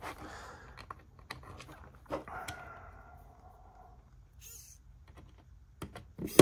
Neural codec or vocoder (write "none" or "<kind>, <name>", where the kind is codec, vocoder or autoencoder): none